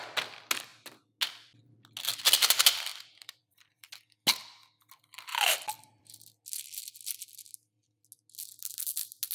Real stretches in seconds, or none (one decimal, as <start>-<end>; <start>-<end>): 0.0-2.9; 3.9-5.3; 6.2-9.3